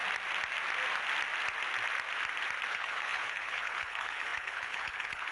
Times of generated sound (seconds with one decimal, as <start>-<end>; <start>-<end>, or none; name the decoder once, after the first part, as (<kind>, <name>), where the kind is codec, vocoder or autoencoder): 2.7-5.3 (codec, HILCodec)